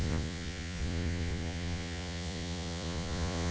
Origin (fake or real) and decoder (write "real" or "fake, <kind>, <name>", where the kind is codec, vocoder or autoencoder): fake, vocoder, Vocos